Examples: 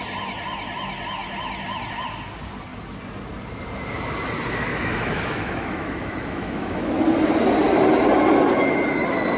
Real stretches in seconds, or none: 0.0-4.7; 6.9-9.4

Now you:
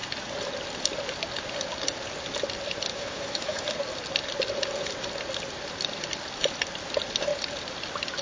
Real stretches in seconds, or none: 0.0-2.9; 3.7-8.2

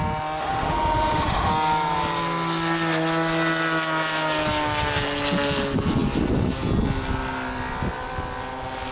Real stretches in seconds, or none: 0.0-0.4; 1.5-8.9

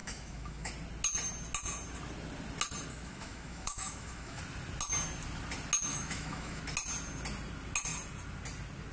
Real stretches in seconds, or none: 0.7-2.9; 4.4-5.9; 6.6-8.9